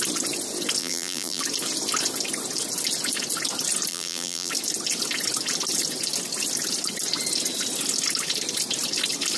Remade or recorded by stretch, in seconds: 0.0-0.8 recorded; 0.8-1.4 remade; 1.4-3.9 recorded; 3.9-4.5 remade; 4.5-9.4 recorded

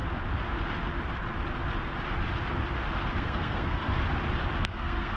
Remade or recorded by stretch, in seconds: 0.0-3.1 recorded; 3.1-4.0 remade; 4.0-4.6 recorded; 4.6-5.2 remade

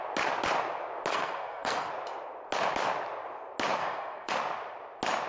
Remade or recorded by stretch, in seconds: 0.0-1.1 recorded; 1.1-1.9 remade; 1.9-3.8 recorded; 3.8-4.3 remade; 4.3-5.3 recorded

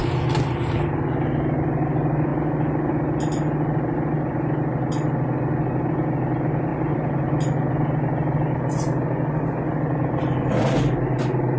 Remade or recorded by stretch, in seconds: 0.0-6.7 recorded; 6.7-7.3 remade; 7.3-11.6 recorded

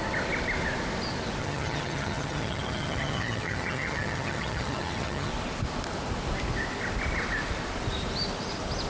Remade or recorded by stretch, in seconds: 0.0-1.4 recorded; 1.4-5.3 remade; 5.3-8.9 recorded